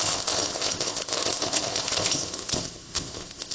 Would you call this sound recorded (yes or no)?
no